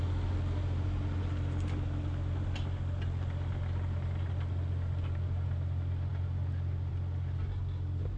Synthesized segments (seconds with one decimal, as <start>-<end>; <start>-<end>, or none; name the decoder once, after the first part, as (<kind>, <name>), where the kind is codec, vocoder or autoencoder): none